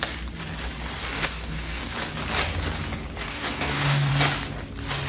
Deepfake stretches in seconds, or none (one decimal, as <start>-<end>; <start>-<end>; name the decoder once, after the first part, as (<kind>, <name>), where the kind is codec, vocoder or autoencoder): 1.0-1.8 (codec, DAC); 3.2-4.1